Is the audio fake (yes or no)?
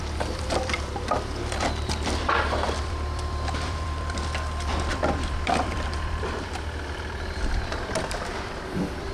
yes